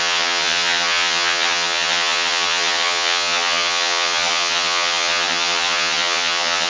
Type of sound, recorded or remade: remade